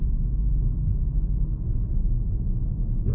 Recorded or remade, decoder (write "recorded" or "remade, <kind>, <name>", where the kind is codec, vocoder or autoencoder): remade, autoencoder, DAC-VAE